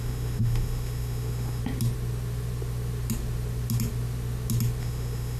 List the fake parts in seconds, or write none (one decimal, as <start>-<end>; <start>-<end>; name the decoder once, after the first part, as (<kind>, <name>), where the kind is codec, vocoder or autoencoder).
0.0-1.6 (autoencoder, DAC-VAE); 4.8-5.4